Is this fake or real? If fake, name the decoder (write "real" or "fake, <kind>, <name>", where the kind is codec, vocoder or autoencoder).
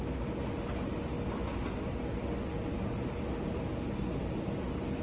real